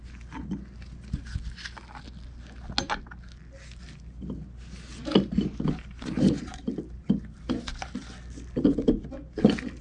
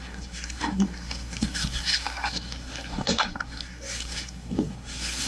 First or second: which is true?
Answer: first